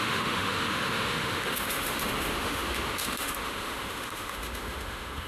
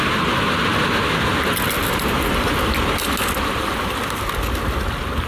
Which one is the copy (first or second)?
first